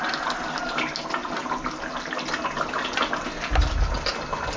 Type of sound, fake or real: real